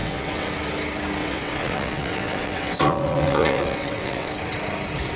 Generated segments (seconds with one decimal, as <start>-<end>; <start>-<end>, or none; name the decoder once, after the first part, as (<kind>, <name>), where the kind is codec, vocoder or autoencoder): 0.0-0.5 (vocoder, WaveNeXt); 1.2-4.3